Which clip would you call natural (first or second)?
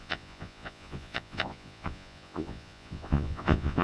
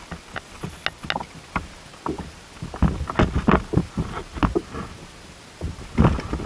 second